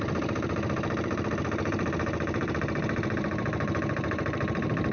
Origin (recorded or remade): remade